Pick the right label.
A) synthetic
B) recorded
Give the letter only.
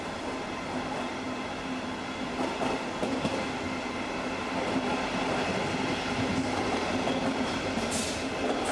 B